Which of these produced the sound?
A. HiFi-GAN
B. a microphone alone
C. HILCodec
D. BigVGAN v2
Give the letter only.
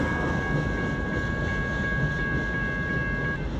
B